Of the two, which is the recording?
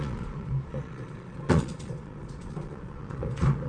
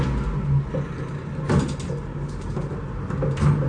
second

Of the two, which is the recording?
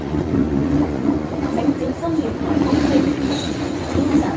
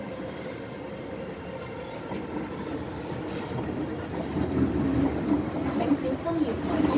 second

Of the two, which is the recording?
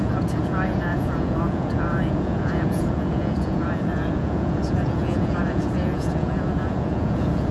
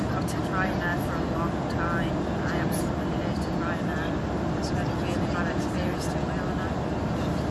second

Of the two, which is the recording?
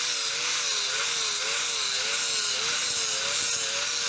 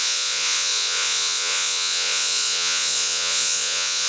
first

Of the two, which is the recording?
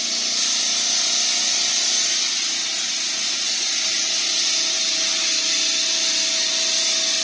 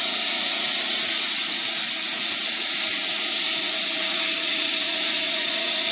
first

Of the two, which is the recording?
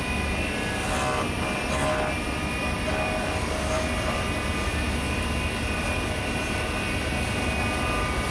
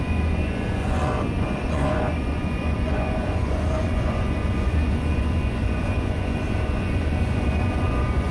first